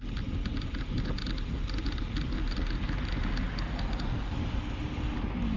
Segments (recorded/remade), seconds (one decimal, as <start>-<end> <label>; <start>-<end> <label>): 0.0-5.6 recorded